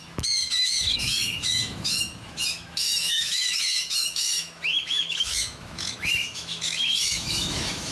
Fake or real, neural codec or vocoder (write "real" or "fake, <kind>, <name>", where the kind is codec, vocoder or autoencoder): fake, autoencoder, DAC-VAE